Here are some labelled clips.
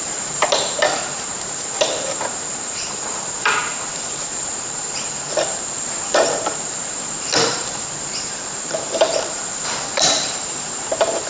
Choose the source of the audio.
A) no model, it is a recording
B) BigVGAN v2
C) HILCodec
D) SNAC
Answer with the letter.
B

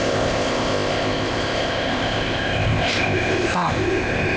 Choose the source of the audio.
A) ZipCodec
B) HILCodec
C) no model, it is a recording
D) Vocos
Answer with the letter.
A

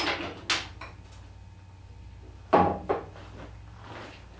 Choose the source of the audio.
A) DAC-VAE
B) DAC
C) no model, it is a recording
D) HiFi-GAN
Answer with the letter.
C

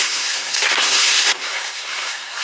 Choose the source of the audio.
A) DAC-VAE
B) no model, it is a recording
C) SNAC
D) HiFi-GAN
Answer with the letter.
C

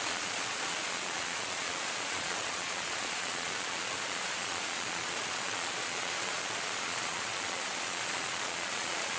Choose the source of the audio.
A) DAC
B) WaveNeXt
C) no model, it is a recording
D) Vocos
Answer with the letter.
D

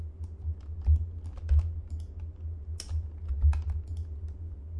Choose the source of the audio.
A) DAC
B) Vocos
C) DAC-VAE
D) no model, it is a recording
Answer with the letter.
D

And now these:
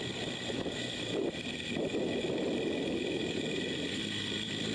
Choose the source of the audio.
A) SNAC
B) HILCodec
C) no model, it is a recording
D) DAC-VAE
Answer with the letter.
C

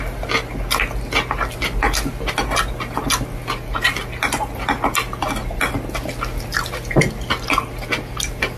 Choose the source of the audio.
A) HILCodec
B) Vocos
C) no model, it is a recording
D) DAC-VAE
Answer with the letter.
C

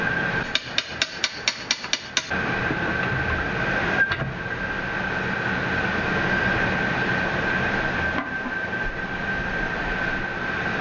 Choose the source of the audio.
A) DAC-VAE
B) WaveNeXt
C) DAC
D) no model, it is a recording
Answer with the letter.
D